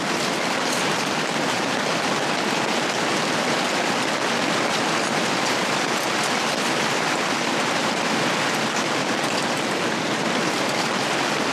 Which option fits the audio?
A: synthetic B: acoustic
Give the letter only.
B